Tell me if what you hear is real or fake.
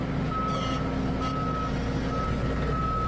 real